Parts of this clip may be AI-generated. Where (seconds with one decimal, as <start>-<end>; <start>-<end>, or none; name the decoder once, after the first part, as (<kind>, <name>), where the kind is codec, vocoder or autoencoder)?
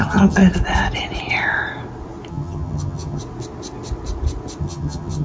0.0-0.4 (vocoder, HiFi-GAN); 2.3-3.2; 4.6-5.2